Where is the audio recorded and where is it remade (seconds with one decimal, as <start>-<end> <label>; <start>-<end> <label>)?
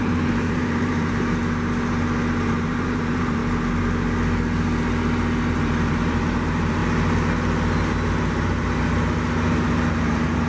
0.0-1.4 remade; 1.4-2.5 recorded; 2.5-3.4 remade; 3.4-5.5 recorded; 5.5-6.8 remade; 6.8-9.9 recorded; 9.9-10.5 remade